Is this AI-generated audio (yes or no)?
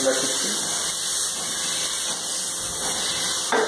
no